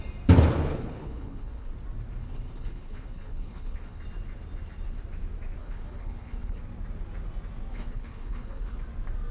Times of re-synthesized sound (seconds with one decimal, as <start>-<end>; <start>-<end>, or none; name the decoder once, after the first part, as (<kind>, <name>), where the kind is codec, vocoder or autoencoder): 0.7-1.7 (codec, HILCodec); 2.2-4.0; 5.6-6.6; 7.7-8.8